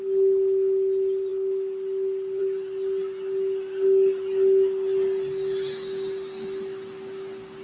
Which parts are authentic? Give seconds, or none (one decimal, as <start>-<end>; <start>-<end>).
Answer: 0.0-7.6